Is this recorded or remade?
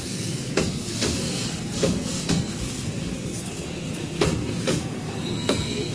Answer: remade